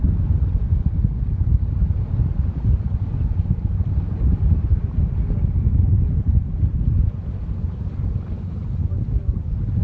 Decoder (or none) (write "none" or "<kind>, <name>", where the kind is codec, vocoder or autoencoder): none